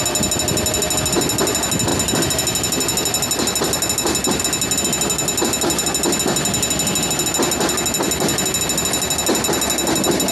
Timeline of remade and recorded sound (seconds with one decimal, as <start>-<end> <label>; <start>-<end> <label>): 0.0-10.3 recorded